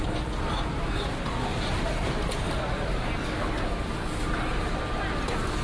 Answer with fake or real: real